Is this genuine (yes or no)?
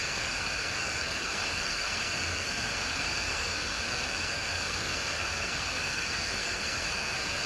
no